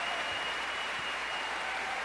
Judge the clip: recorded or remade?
remade